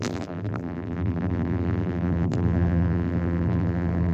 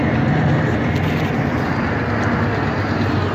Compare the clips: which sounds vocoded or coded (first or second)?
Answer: first